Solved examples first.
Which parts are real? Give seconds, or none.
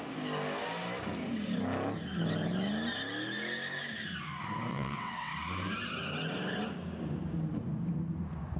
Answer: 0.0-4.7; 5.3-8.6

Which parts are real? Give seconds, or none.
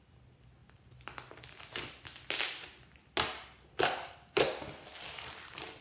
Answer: 0.0-5.8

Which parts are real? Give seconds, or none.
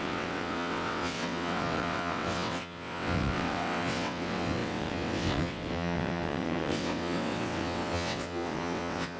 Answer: none